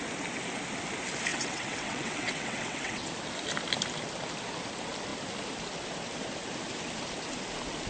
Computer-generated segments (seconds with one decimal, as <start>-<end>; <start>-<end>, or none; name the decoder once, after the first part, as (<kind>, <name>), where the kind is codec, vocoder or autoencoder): 1.3-3.1 (vocoder, WaveNeXt)